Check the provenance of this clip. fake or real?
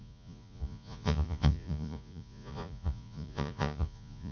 fake